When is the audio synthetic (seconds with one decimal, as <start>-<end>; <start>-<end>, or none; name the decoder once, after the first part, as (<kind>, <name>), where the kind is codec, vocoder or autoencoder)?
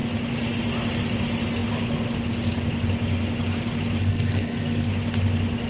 4.0-4.9 (codec, SNAC)